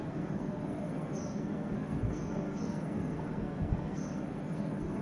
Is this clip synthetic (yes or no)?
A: yes